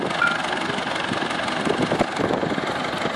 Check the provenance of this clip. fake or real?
real